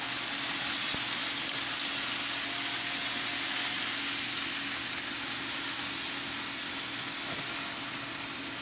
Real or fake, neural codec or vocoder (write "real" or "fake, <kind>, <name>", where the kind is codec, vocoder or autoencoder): real